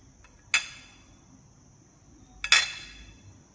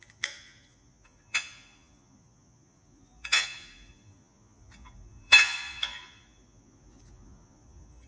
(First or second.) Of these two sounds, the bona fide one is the first